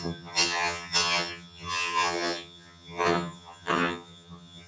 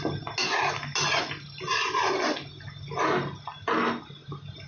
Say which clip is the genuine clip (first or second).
second